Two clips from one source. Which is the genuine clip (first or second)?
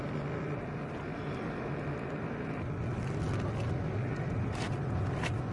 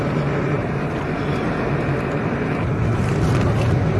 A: first